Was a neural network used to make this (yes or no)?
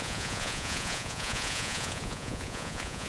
yes